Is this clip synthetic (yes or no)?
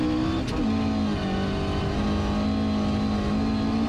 no